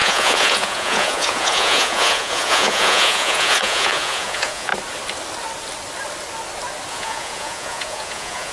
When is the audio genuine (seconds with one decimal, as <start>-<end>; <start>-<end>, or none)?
4.7-6.9